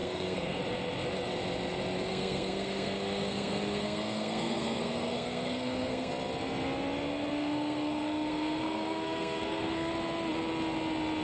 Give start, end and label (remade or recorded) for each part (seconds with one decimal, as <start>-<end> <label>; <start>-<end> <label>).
0.0-0.6 remade; 0.6-2.1 recorded; 2.1-6.1 remade; 6.1-7.3 recorded; 7.3-9.9 remade; 9.9-11.2 recorded